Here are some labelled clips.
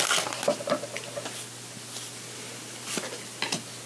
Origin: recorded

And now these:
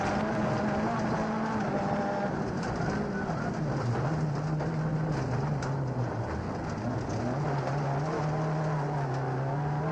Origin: recorded